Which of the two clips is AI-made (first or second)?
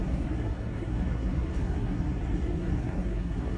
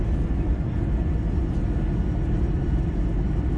first